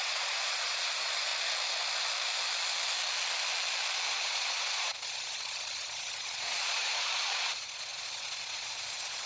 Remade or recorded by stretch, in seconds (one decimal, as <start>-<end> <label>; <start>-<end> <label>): 0.0-1.3 remade; 1.3-4.1 recorded; 4.1-9.3 remade